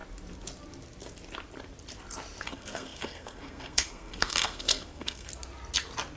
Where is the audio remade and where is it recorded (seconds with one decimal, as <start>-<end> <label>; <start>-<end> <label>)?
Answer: 0.0-2.4 recorded; 2.4-5.3 remade; 5.3-6.2 recorded